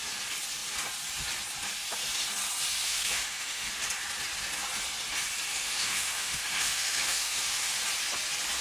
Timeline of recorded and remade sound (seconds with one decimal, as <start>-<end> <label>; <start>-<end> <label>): 0.0-2.8 recorded; 2.8-3.7 remade; 3.7-5.5 recorded; 5.5-7.8 remade; 7.8-8.6 recorded